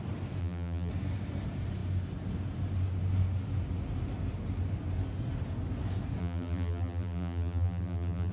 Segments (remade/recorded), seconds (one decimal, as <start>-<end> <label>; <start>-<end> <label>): 0.0-0.4 recorded; 0.4-0.9 remade; 0.9-6.2 recorded; 6.2-8.3 remade